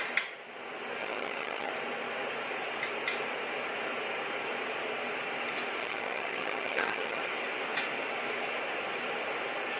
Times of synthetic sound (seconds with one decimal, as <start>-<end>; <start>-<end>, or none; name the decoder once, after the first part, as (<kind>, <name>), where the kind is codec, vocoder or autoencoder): 1.0-1.7 (vocoder, HiFi-GAN); 5.8-7.2